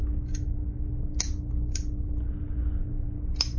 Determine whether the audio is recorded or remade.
recorded